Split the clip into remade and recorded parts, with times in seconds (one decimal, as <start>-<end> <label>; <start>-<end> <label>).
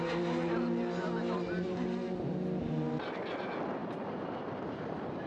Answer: 0.0-5.3 recorded